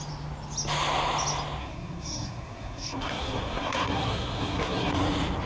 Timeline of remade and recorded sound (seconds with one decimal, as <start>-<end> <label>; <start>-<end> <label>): 0.0-1.6 recorded; 1.6-4.9 remade; 4.9-5.5 recorded